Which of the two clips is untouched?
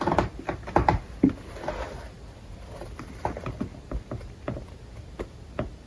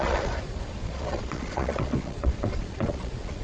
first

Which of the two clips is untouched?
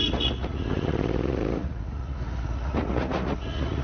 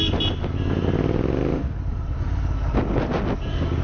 second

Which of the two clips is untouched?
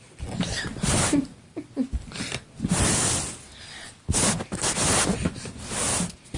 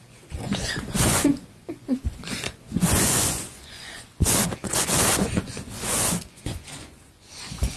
first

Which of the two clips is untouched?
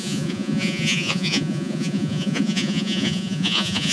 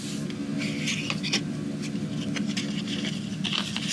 second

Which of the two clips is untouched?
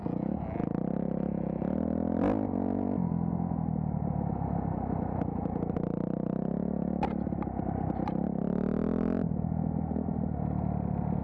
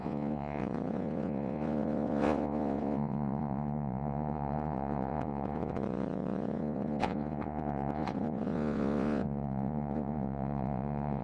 first